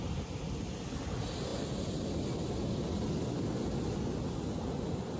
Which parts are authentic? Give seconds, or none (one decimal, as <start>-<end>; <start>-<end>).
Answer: 0.0-5.2